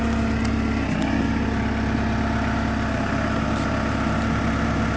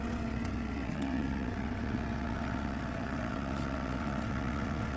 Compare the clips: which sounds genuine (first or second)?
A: first